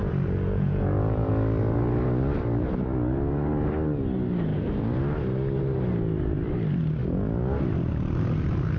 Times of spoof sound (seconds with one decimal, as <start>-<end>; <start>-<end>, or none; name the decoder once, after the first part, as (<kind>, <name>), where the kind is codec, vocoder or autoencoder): 0.0-1.3 (vocoder, Vocos)